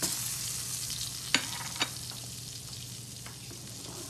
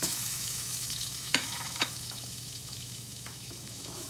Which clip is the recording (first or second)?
first